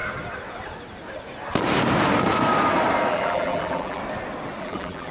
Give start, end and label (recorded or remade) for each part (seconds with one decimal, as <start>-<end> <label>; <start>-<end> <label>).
0.0-3.1 recorded; 3.1-4.0 remade; 4.0-4.6 recorded; 4.6-5.1 remade